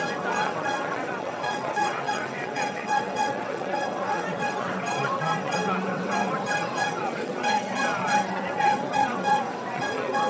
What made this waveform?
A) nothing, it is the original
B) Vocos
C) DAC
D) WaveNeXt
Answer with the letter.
D